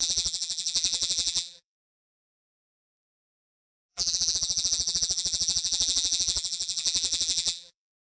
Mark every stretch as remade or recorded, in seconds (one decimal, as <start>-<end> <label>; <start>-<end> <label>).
0.0-2.8 remade; 2.8-3.9 recorded; 3.9-8.1 remade

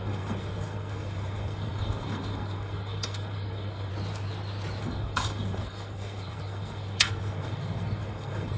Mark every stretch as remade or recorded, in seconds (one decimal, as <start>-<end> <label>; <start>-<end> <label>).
0.0-3.9 remade; 3.9-4.8 recorded; 4.8-8.6 remade

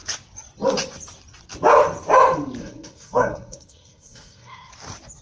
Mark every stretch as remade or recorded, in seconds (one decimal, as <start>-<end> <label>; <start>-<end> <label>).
0.0-2.6 recorded; 2.6-4.7 remade; 4.7-5.2 recorded

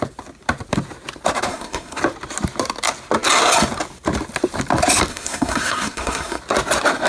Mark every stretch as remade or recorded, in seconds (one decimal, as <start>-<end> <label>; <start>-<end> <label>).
0.0-1.5 recorded; 1.5-2.0 remade; 2.0-5.1 recorded; 5.1-6.4 remade; 6.4-7.1 recorded

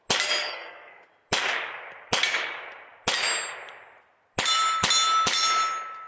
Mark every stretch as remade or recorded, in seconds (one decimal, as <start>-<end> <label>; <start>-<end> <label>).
0.0-0.4 recorded; 0.4-1.1 remade; 1.1-6.1 recorded